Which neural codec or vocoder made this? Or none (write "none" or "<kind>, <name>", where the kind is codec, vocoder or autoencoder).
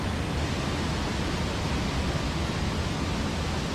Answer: none